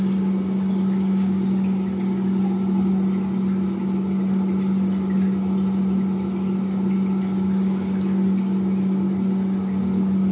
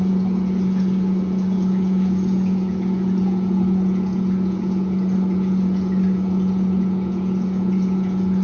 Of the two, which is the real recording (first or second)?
first